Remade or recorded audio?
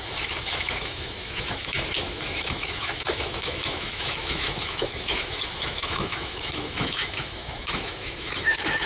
remade